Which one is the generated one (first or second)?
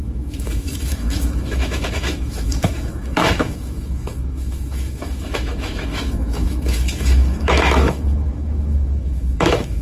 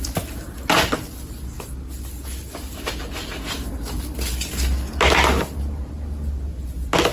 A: first